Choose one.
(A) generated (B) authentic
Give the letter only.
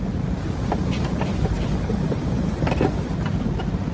B